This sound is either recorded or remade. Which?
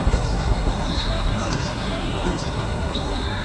remade